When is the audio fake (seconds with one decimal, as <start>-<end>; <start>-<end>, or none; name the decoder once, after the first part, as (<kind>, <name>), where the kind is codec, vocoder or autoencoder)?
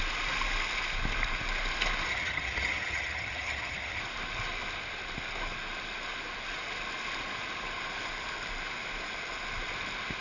2.1-4.0 (vocoder, HiFi-GAN)